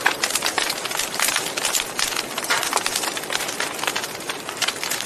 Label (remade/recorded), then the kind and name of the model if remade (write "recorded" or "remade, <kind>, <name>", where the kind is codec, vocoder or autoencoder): remade, vocoder, BigVGAN v2